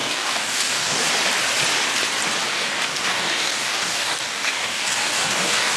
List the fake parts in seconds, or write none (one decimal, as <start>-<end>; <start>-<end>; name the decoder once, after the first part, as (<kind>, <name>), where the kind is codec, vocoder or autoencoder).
0.0-1.1 (codec, DAC); 2.5-5.8